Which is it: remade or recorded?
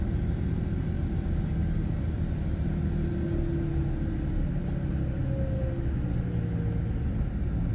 recorded